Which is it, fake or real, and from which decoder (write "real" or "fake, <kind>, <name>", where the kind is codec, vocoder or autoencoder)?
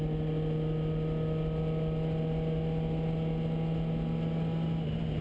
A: real